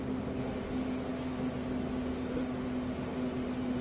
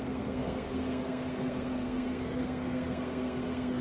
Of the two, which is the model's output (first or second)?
second